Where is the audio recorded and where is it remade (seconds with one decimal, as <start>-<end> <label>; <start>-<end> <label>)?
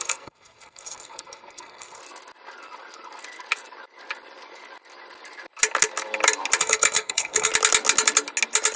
0.0-2.0 remade; 2.0-6.6 recorded; 6.6-7.5 remade; 7.5-8.8 recorded